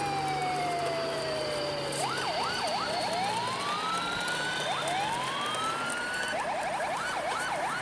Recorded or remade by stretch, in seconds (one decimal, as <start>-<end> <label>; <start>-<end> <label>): 0.0-0.4 recorded; 0.4-3.1 remade; 3.1-7.8 recorded